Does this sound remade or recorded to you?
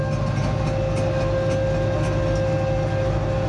recorded